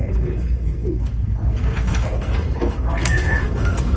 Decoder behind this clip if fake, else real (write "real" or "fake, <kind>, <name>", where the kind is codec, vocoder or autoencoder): fake, codec, SNAC